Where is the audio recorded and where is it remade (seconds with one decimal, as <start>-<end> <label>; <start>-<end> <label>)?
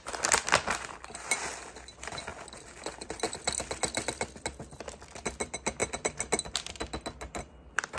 0.0-8.0 recorded